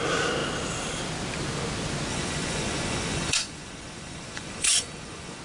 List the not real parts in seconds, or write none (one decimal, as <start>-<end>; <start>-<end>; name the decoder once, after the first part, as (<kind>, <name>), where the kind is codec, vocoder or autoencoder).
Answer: 2.1-5.4 (vocoder, Vocos)